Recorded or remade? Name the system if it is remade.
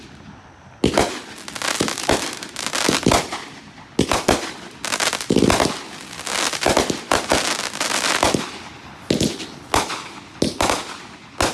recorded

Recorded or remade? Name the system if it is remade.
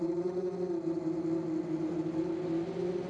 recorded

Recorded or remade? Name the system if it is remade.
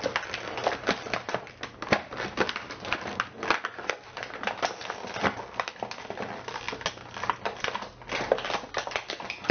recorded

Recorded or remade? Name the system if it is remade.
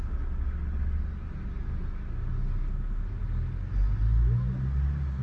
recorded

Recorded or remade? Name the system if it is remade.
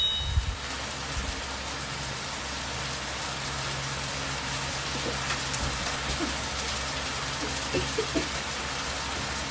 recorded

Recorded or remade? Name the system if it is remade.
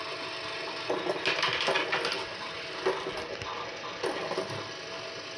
recorded